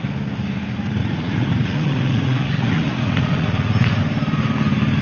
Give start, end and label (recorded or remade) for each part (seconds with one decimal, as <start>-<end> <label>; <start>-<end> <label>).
0.0-1.0 recorded; 1.0-4.0 remade; 4.0-5.0 recorded